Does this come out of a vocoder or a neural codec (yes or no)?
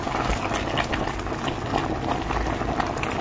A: no